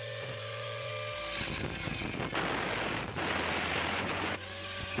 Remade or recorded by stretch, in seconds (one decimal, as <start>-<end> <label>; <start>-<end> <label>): 0.0-0.9 remade; 0.9-3.9 recorded; 3.9-5.0 remade